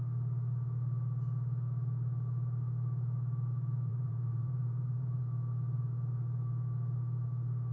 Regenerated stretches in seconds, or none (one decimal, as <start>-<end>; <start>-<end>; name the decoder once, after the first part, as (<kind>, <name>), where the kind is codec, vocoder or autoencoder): 3.9-5.2 (vocoder, BigVGAN v2)